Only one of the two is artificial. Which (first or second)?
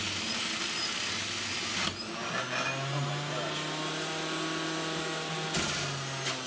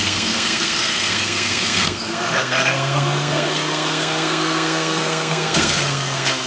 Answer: second